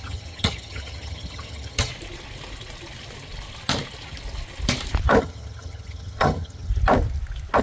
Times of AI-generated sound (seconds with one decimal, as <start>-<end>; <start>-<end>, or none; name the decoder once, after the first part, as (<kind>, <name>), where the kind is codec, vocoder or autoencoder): 0.0-1.9 (vocoder, HiFi-GAN); 5.2-6.7

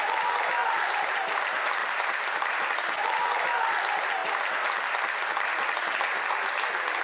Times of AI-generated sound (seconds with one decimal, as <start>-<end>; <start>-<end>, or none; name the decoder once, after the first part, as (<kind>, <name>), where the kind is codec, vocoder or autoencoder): 0.6-1.4 (vocoder, BigVGAN v2); 1.8-2.6

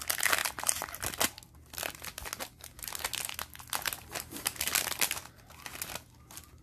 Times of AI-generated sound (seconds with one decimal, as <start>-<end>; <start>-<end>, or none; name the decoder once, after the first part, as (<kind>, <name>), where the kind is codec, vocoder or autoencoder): none

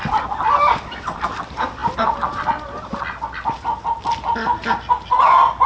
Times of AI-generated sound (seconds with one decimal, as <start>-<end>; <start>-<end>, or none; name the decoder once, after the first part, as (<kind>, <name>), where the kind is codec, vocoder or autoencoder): 0.0-1.8 (vocoder, BigVGAN v2); 4.8-5.7

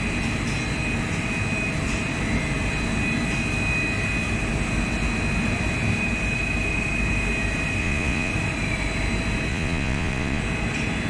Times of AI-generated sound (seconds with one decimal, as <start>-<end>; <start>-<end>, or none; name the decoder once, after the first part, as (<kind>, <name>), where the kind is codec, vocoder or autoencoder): 7.8-8.3 (vocoder, Vocos); 9.5-10.4